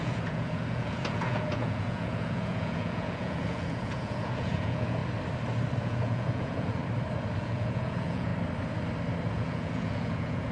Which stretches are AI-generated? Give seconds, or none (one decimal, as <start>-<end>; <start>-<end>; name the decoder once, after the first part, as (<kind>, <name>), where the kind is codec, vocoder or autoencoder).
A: 0.0-5.0 (vocoder, Vocos); 5.8-6.8; 7.4-8.3; 9.3-10.5